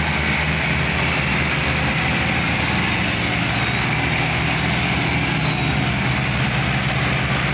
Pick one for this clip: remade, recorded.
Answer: recorded